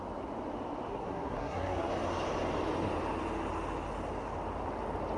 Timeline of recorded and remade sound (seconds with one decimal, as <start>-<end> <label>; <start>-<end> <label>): 0.0-0.9 recorded; 0.9-1.9 remade; 1.9-5.2 recorded